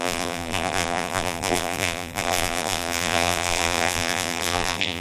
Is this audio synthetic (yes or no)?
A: yes